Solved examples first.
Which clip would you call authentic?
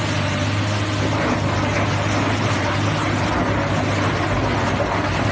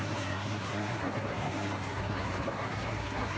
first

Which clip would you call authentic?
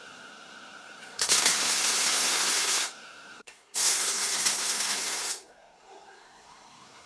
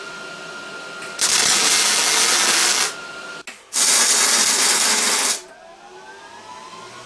second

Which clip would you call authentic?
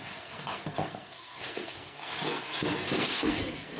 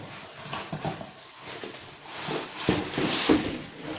second